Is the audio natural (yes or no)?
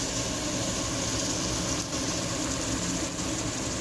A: yes